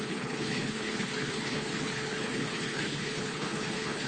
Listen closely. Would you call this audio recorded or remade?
remade